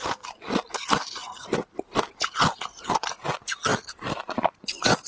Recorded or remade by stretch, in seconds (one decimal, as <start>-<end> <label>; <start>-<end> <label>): 0.0-5.1 recorded